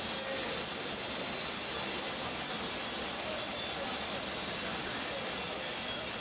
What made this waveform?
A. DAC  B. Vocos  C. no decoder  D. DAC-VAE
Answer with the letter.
C